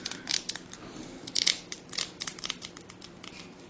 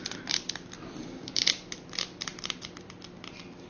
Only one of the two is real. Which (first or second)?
second